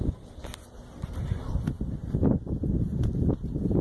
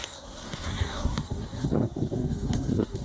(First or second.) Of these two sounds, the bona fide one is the first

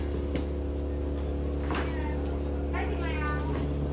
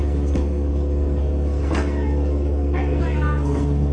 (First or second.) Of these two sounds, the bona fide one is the first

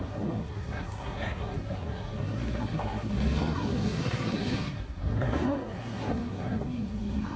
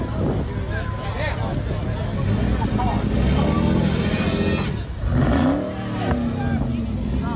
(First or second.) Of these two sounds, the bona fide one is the second